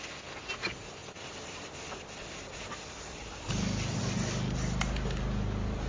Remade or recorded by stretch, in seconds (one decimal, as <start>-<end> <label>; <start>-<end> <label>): 0.0-1.0 recorded; 1.0-4.0 remade; 4.0-5.9 recorded